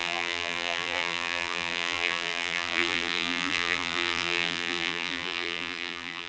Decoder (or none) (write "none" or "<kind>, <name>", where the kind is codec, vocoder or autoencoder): vocoder, BigVGAN v2